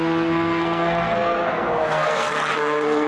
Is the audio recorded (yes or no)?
no